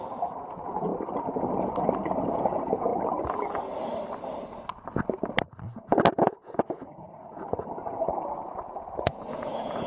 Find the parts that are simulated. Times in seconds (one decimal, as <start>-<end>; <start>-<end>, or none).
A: 0.0-0.9; 2.3-2.9; 6.1-9.9